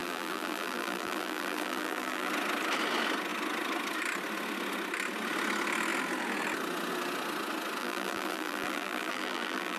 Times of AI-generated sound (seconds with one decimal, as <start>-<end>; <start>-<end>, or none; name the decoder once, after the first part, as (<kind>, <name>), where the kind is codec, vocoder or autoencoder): 0.0-2.3 (vocoder, BigVGAN v2); 7.8-9.8